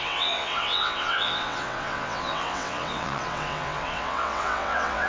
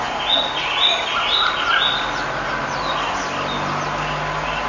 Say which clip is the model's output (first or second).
first